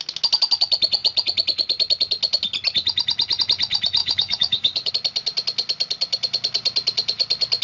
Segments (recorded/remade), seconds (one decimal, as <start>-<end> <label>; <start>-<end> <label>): 0.0-4.0 recorded; 4.0-4.9 remade; 4.9-7.6 recorded